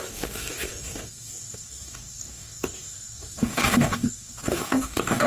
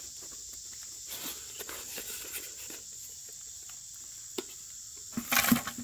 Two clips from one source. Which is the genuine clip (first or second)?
second